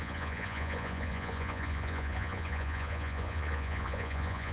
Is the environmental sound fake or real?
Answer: fake